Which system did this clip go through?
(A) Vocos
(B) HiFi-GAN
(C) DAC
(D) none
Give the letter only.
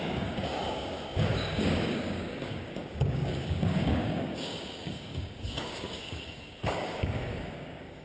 C